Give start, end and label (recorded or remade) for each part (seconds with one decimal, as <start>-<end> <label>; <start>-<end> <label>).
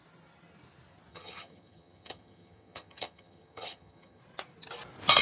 0.0-1.1 recorded; 1.1-4.2 remade; 4.2-5.2 recorded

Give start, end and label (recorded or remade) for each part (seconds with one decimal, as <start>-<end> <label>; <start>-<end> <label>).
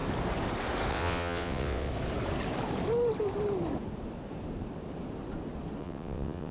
0.0-0.9 recorded; 0.9-1.9 remade; 1.9-5.8 recorded; 5.8-6.5 remade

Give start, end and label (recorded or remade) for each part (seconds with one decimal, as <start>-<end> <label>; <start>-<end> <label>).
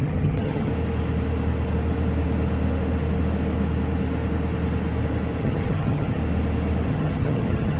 0.0-0.7 remade; 0.7-5.4 recorded; 5.4-6.2 remade; 6.2-6.9 recorded; 6.9-7.8 remade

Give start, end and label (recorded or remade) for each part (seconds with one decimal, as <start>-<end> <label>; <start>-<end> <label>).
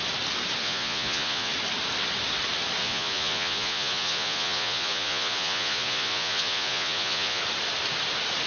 0.0-0.6 recorded; 0.6-1.5 remade; 1.5-2.8 recorded; 2.8-7.4 remade; 7.4-8.5 recorded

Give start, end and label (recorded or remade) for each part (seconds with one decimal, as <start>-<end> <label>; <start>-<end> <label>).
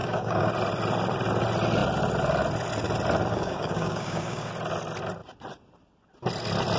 0.0-0.5 remade; 0.5-3.3 recorded; 3.3-4.5 remade; 4.5-6.8 recorded